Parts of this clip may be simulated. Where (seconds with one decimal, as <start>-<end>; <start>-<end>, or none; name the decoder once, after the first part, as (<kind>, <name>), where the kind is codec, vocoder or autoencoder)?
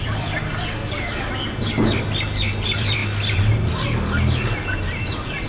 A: 0.0-0.8 (vocoder, BigVGAN v2); 2.6-3.0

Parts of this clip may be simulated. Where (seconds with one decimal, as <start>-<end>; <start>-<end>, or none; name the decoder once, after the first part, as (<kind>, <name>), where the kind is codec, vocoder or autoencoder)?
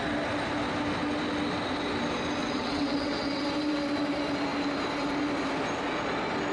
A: 2.4-3.4 (vocoder, WaveNeXt)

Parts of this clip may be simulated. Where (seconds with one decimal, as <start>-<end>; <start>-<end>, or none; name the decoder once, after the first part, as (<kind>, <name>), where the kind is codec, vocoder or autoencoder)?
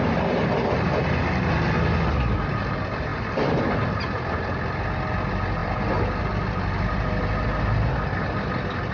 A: none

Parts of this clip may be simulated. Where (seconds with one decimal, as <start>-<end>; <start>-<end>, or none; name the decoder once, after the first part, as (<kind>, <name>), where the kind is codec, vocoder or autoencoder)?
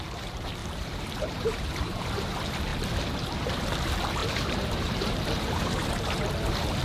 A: 0.6-2.2 (vocoder, BigVGAN v2); 4.2-6.2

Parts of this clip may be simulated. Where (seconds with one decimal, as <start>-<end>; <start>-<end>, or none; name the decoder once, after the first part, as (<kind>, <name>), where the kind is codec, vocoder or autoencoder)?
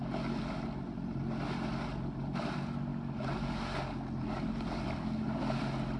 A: none